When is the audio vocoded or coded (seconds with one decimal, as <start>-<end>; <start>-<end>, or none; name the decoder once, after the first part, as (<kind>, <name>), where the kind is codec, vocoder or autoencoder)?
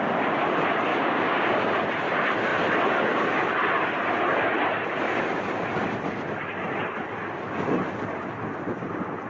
0.9-1.7 (codec, DAC)